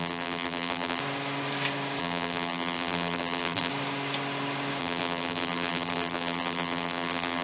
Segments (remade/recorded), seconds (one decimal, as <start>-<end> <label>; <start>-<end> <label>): 0.0-1.0 remade; 1.0-2.0 recorded; 2.0-3.7 remade; 3.7-4.8 recorded; 4.8-7.4 remade

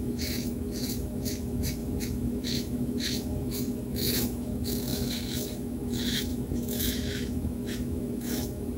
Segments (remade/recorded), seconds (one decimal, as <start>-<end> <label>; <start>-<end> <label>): 0.0-8.8 remade

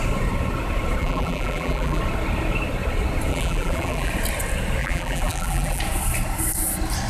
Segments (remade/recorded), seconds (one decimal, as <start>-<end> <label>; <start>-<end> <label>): 0.0-1.0 recorded; 1.0-2.0 remade; 2.0-3.3 recorded; 3.3-4.1 remade; 4.1-4.8 recorded; 4.8-5.8 remade; 5.8-7.1 recorded

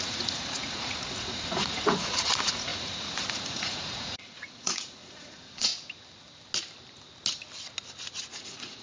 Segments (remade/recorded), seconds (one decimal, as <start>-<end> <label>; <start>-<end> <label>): 0.0-5.7 remade; 5.7-8.4 recorded; 8.4-8.8 remade

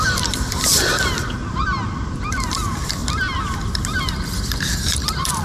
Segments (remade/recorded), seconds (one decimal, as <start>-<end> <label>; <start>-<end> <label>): 0.0-1.4 remade; 1.4-2.0 recorded; 2.0-3.0 remade; 3.0-3.9 recorded; 3.9-5.4 remade

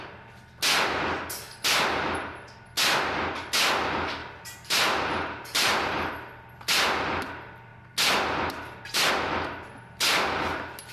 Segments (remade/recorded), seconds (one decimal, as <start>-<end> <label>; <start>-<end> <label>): 0.0-4.2 recorded; 4.2-6.1 remade; 6.1-10.9 recorded

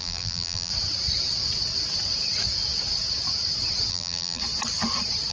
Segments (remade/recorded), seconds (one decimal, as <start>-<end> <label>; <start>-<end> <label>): 0.0-0.7 remade; 0.7-3.9 recorded; 3.9-4.4 remade; 4.4-5.3 recorded

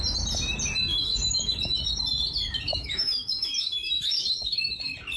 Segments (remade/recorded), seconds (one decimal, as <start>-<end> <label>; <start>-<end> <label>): 0.0-0.8 recorded; 0.8-2.0 remade; 2.0-2.7 recorded; 2.7-4.8 remade; 4.8-5.2 recorded